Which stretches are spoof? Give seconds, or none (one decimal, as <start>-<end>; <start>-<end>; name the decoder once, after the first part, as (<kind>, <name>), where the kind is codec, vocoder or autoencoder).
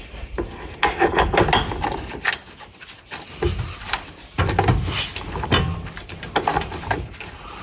none